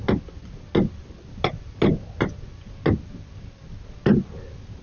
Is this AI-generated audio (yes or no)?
no